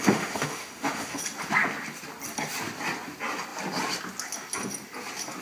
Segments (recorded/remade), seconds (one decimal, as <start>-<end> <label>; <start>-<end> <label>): 0.0-1.2 remade; 1.2-5.4 recorded